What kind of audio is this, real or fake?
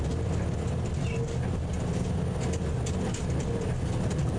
real